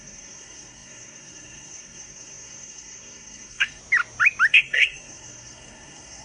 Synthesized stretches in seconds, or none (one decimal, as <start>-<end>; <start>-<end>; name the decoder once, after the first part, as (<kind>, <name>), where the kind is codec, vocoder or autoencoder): 0.0-3.8 (codec, SNAC); 4.5-6.2